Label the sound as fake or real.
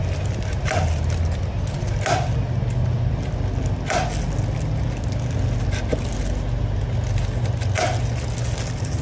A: real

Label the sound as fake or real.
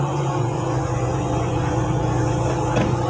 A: fake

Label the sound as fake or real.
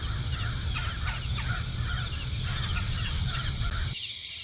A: real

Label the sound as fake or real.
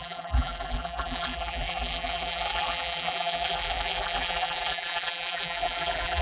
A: fake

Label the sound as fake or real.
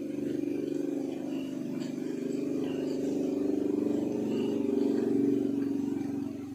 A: real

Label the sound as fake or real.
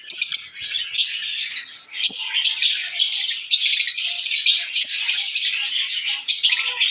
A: real